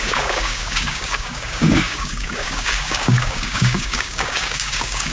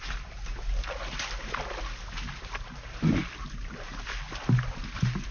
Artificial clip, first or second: first